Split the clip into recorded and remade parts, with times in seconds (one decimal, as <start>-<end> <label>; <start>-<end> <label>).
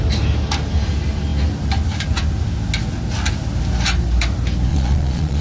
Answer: 0.0-4.7 recorded; 4.7-5.4 remade